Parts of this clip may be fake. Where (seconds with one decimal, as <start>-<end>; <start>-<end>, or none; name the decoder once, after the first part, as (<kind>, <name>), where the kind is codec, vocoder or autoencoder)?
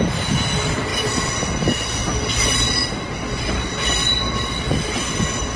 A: none